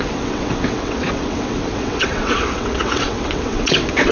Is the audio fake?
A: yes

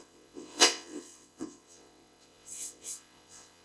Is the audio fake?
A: yes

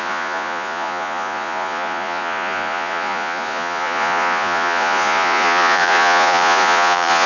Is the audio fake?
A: yes